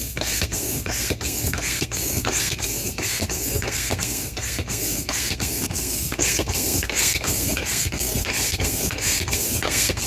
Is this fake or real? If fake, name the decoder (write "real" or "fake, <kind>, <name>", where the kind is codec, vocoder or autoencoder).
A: fake, codec, SNAC